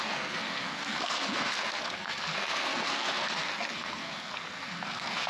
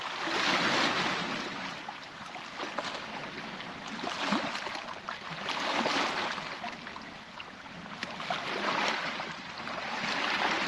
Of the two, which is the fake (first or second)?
first